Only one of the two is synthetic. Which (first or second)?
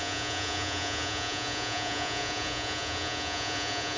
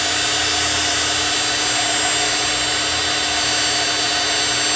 first